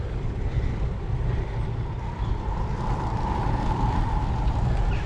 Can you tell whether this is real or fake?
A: real